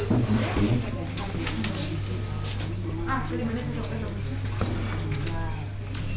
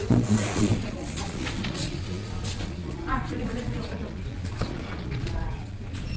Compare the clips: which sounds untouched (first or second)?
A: first